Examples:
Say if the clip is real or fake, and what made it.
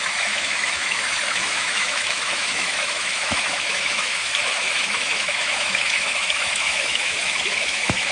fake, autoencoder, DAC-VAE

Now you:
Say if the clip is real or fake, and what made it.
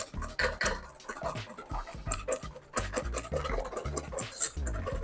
real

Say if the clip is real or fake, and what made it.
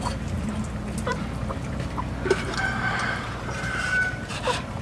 fake, vocoder, BigVGAN v2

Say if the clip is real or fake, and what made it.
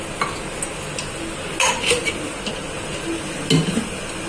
real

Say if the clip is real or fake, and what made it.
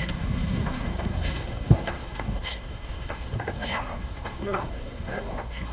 fake, codec, SNAC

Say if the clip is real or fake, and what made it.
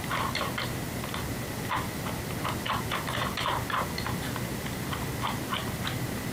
real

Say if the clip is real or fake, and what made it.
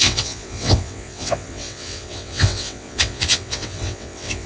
fake, vocoder, WaveNeXt